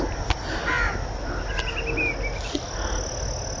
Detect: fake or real real